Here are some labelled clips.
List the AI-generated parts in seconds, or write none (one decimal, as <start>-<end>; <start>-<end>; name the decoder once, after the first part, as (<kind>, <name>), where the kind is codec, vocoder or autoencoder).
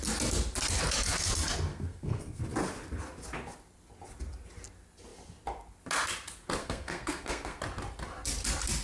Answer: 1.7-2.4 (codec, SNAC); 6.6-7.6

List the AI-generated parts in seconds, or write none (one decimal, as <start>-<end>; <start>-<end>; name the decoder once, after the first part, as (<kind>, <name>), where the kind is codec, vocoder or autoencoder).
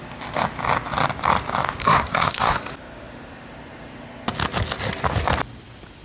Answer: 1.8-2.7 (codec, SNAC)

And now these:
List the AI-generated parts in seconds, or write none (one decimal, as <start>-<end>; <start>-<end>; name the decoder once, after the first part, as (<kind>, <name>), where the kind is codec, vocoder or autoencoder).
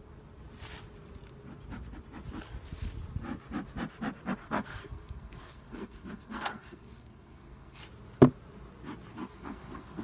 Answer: 4.4-7.8 (codec, SNAC); 9.1-10.0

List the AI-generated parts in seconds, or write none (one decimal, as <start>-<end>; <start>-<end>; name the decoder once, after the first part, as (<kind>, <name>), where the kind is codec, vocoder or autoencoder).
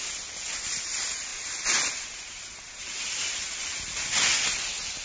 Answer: none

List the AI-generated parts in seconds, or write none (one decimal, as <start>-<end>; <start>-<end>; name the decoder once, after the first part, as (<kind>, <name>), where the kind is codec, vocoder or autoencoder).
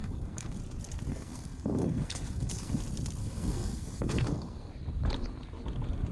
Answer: 0.0-0.6 (codec, SNAC); 1.1-2.8; 3.2-4.7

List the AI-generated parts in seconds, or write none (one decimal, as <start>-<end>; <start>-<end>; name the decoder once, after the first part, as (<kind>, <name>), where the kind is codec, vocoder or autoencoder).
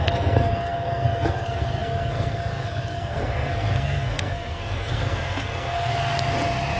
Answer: 0.0-5.9 (codec, SNAC)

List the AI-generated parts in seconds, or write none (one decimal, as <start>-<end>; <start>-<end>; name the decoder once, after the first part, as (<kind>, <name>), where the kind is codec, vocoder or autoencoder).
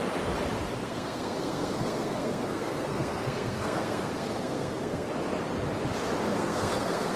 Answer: 0.8-5.1 (codec, SNAC); 6.3-7.2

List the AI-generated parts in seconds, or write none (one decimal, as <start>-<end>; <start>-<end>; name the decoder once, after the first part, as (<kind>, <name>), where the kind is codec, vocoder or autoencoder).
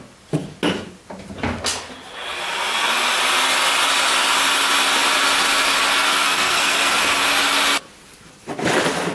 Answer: 6.1-7.0 (codec, SNAC)